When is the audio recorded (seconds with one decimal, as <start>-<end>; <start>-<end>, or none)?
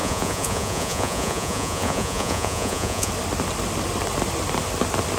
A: 3.1-5.2